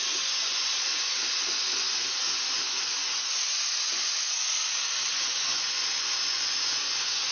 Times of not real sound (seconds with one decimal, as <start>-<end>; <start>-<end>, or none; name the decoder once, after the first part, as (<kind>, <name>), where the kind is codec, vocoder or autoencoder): 0.0-4.6 (vocoder, Vocos); 5.1-7.3